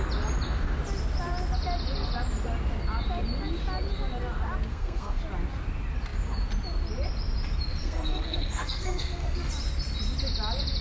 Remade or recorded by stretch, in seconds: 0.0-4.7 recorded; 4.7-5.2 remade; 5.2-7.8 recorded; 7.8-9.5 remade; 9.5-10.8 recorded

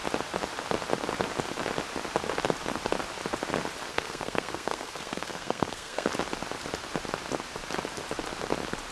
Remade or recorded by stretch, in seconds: 0.0-3.9 recorded; 3.9-6.1 remade; 6.1-8.9 recorded